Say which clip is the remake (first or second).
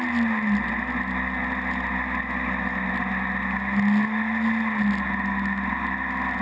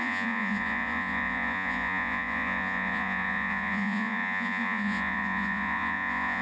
second